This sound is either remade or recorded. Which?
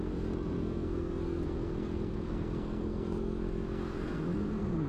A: remade